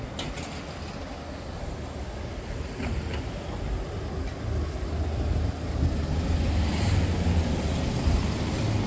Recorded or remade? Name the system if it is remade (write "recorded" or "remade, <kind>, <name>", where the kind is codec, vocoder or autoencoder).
recorded